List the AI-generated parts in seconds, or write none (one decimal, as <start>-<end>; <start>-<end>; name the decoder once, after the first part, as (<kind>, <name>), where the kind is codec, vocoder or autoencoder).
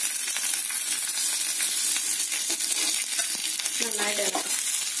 none